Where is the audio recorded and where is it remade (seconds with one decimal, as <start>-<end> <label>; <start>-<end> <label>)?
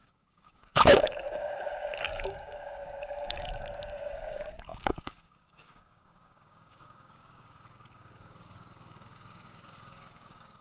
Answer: 0.0-10.6 remade